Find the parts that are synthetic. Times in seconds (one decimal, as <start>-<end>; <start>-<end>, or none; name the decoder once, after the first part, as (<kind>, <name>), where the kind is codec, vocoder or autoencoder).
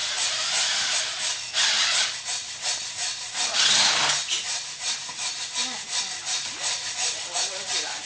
none